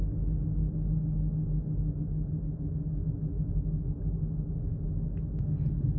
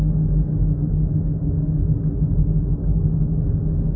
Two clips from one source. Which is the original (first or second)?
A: first